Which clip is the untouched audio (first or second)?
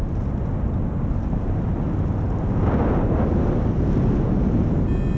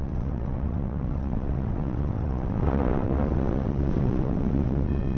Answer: first